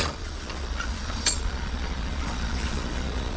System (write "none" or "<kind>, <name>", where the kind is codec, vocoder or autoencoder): vocoder, Vocos